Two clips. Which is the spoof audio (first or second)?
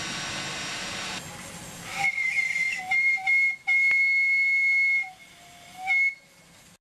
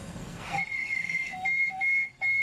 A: second